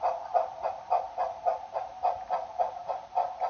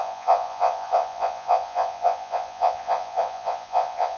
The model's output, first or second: second